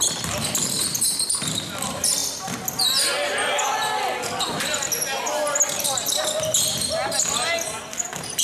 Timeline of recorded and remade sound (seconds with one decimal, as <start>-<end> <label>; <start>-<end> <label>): 0.0-8.4 recorded